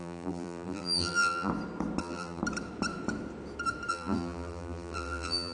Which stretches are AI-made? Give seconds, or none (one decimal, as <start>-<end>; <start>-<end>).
0.0-1.5; 2.0-2.4; 3.9-5.5